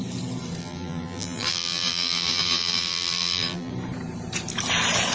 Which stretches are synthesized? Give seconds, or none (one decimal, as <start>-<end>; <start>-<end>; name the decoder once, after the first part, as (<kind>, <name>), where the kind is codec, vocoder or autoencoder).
0.6-3.7 (vocoder, BigVGAN v2)